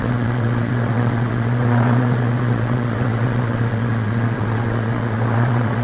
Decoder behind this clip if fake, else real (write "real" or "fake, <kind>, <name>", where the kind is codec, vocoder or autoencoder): fake, vocoder, WaveNeXt